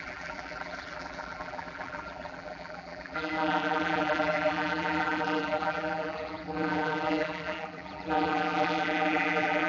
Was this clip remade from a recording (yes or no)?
yes